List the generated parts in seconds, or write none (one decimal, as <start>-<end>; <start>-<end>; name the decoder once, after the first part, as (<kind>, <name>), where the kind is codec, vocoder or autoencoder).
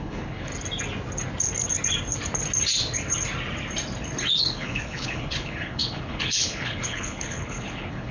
0.0-0.5 (codec, HILCodec); 4.3-8.1